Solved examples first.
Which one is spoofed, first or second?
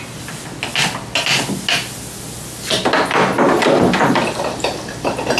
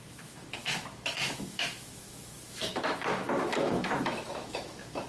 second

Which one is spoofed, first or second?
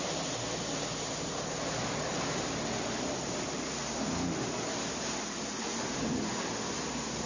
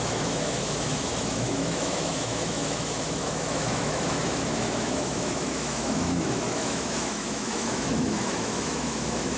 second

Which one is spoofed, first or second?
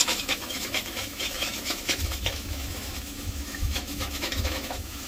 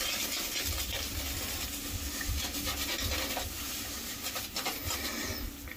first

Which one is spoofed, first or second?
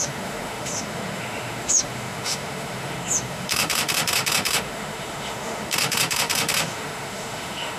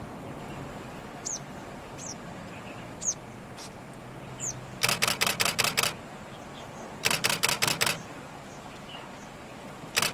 first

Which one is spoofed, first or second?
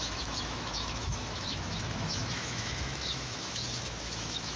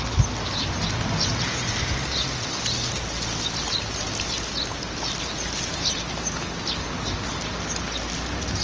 first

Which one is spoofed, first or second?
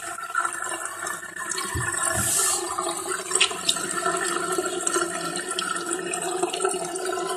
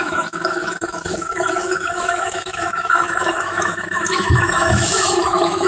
second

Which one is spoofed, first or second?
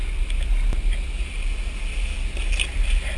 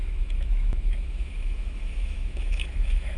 second